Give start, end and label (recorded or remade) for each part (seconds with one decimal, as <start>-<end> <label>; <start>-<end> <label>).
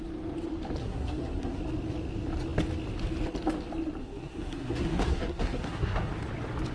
0.0-0.8 recorded; 0.8-1.6 remade; 1.6-4.0 recorded; 4.0-6.1 remade; 6.1-6.7 recorded